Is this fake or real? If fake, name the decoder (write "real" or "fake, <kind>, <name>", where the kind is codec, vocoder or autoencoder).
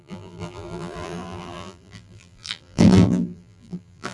fake, vocoder, BigVGAN v2